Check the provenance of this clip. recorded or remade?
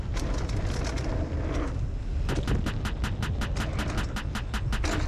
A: recorded